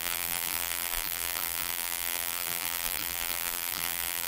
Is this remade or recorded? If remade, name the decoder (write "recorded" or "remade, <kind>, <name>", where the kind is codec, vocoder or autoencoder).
remade, vocoder, BigVGAN v2